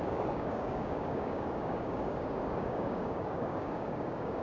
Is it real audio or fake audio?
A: fake